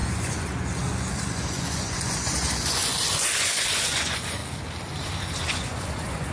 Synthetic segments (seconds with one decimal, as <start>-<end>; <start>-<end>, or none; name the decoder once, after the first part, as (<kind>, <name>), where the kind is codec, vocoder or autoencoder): 0.0-4.4 (vocoder, Vocos); 5.4-6.3